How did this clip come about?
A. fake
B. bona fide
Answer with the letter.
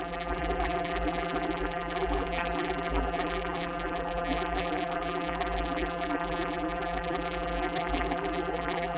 A